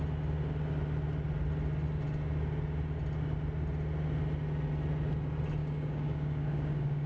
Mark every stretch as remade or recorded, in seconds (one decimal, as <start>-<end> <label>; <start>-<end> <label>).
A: 0.0-5.6 recorded; 5.6-7.1 remade